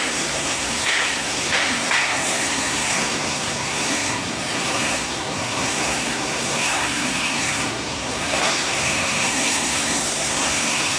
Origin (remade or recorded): remade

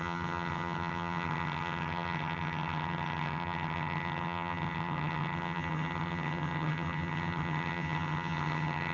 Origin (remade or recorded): remade